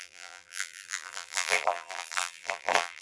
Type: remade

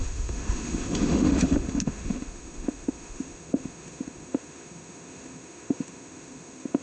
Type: remade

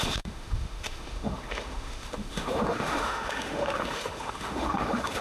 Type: remade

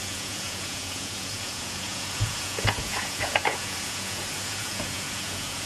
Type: remade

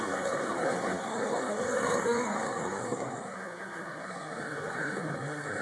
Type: remade